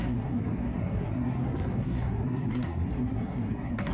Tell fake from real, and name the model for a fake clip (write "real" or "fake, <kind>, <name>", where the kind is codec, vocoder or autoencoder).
fake, codec, SNAC